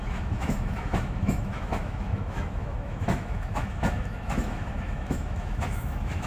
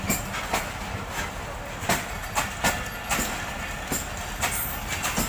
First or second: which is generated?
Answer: first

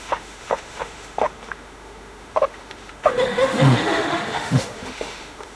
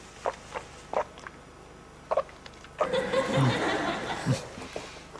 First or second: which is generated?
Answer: first